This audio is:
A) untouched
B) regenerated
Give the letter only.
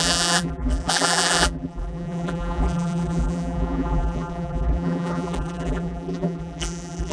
B